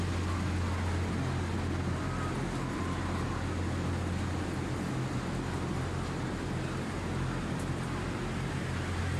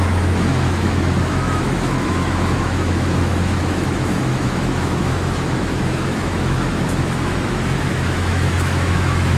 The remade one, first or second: second